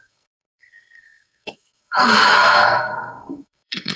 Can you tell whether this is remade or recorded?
remade